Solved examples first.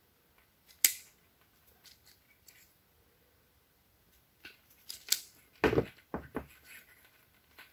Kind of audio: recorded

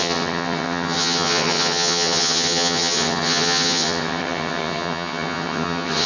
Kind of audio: remade